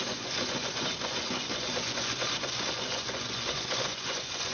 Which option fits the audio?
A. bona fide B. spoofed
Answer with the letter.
B